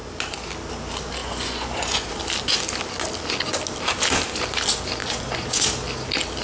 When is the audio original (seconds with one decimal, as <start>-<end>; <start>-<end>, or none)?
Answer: 0.0-1.2; 2.1-5.0; 5.6-6.4